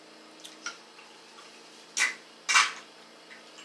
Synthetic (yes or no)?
no